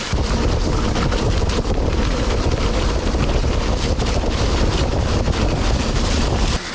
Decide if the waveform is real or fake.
real